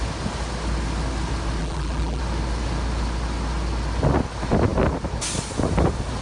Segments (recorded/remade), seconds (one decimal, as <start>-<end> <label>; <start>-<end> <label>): 0.0-1.6 recorded; 1.6-2.2 remade; 2.2-6.2 recorded